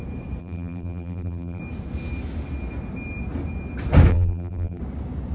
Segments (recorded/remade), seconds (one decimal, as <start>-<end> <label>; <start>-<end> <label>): 0.0-0.4 recorded; 0.4-1.6 remade; 1.6-4.1 recorded; 4.1-4.8 remade; 4.8-5.3 recorded